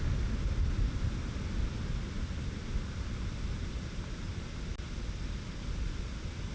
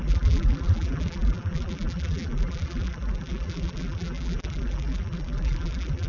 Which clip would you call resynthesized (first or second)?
second